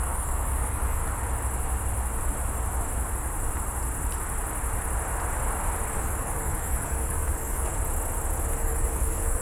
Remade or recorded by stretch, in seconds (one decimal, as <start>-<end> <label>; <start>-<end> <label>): 0.0-1.0 remade; 1.0-5.9 recorded; 5.9-7.7 remade; 7.7-8.6 recorded; 8.6-9.4 remade